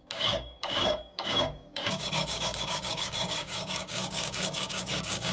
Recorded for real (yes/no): no